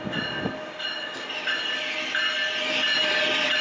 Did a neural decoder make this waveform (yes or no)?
no